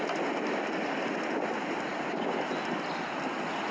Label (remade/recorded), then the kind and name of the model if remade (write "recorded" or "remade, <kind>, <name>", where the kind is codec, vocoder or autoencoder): recorded